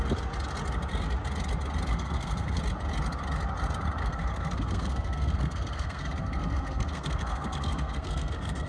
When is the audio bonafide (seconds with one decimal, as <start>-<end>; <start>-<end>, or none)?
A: 0.0-1.9; 2.6-4.0